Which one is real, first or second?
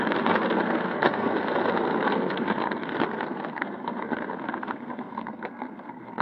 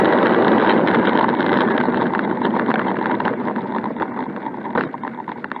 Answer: second